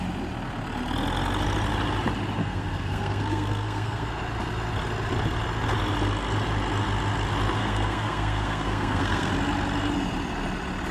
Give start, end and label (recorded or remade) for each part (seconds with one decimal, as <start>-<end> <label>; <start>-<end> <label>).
0.0-2.4 recorded; 2.4-4.1 remade; 4.1-7.6 recorded; 7.6-9.3 remade; 9.3-10.9 recorded